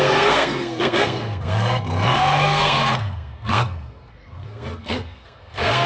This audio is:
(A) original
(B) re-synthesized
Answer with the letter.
B